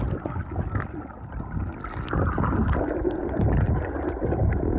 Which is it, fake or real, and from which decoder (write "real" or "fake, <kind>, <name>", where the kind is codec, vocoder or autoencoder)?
real